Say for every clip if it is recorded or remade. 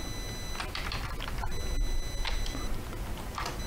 recorded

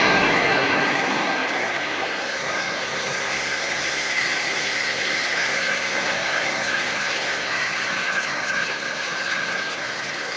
remade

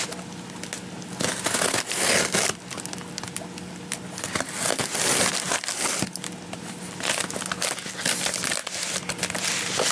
recorded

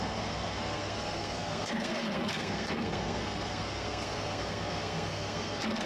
remade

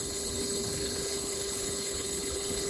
remade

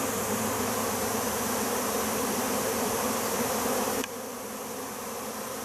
remade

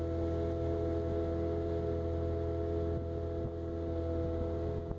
recorded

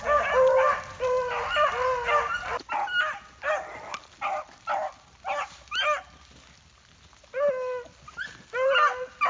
recorded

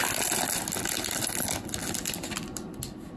recorded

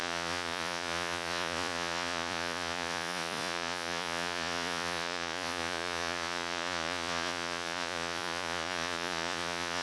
remade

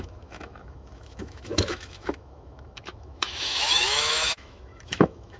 remade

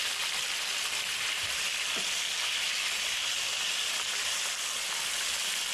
recorded